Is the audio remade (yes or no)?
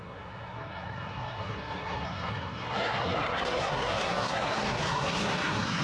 yes